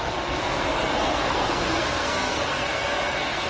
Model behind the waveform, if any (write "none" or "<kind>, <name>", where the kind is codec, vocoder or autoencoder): codec, SNAC